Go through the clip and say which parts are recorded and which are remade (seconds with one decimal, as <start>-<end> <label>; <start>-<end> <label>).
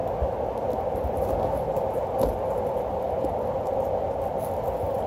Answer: 0.0-5.1 recorded